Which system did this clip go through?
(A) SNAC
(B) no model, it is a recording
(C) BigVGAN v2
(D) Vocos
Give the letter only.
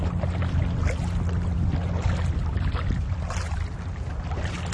B